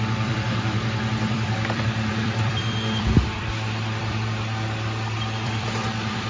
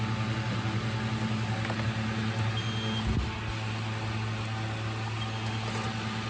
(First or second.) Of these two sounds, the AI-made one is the first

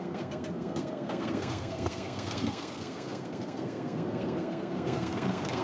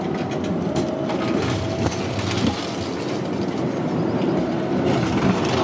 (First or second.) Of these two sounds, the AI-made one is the first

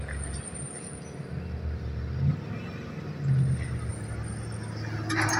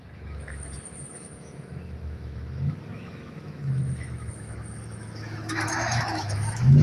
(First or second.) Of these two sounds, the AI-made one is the second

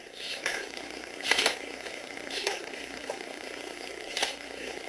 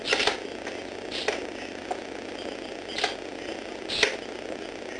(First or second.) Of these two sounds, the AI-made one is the first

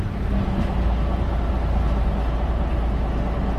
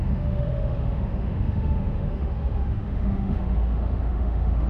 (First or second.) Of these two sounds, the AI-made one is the second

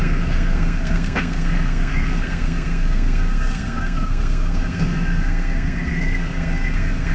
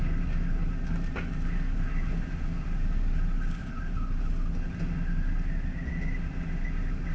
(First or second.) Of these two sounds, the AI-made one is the first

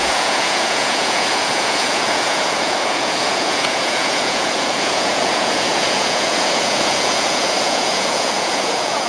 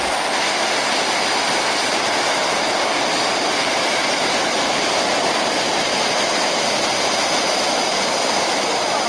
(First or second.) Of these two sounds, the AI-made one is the first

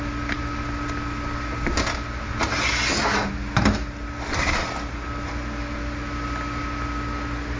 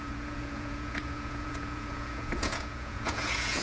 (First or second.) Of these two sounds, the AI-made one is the second